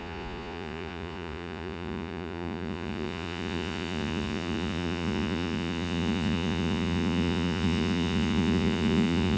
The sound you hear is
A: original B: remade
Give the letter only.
B